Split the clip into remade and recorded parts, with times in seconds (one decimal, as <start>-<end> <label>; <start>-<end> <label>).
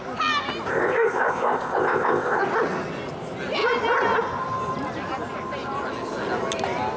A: 0.0-0.7 recorded; 0.7-2.4 remade; 2.4-7.0 recorded